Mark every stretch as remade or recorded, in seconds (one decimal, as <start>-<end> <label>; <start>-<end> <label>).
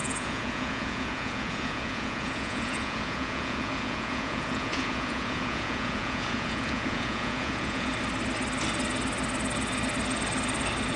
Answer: 0.0-7.9 remade; 7.9-11.0 recorded